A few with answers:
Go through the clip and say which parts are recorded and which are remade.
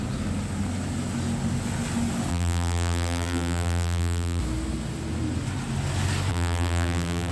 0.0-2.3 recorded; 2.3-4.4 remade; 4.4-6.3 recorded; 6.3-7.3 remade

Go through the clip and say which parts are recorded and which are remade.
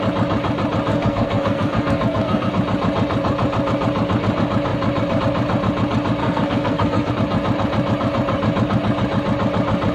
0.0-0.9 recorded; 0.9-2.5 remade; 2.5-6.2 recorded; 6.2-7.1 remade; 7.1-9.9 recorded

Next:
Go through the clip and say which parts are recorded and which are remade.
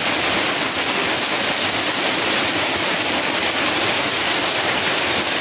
0.0-5.4 recorded